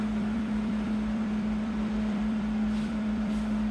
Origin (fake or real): fake